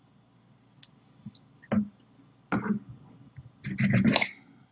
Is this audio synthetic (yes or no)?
no